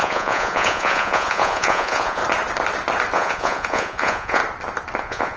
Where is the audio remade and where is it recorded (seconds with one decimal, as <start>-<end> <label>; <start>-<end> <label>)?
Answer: 0.0-2.2 remade; 2.2-3.1 recorded; 3.1-4.4 remade; 4.4-5.0 recorded; 5.0-5.4 remade